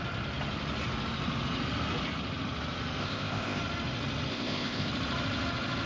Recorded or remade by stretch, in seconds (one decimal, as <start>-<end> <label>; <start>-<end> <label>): 0.0-3.0 recorded; 3.0-3.6 remade; 3.6-4.3 recorded; 4.3-4.9 remade; 4.9-5.9 recorded